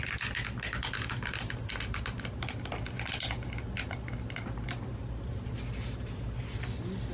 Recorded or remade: recorded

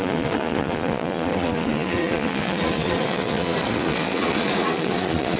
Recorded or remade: remade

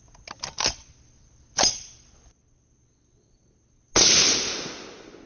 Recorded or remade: recorded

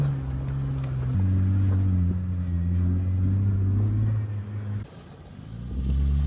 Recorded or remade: recorded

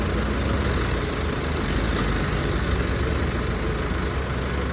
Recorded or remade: recorded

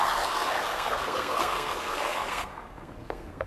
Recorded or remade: remade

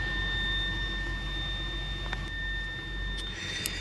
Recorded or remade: recorded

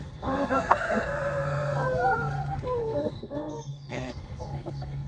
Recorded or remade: remade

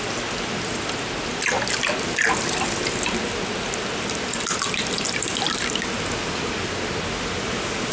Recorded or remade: recorded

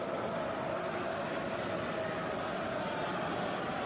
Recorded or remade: recorded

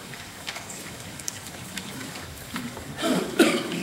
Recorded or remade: remade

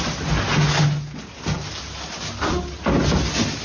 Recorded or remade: recorded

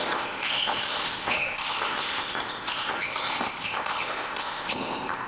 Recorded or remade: remade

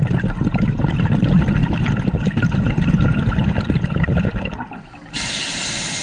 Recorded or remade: recorded